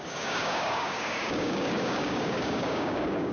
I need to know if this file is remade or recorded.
remade